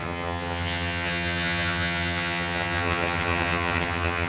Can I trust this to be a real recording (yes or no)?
no